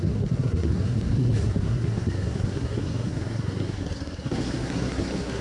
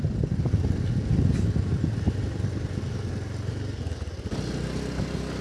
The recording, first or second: second